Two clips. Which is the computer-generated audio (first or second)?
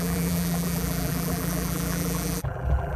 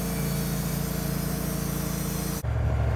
first